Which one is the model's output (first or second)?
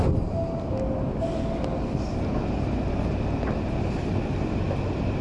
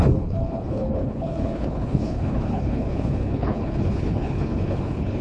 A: second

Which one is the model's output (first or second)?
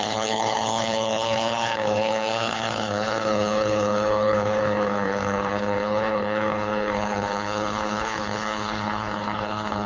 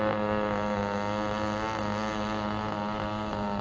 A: first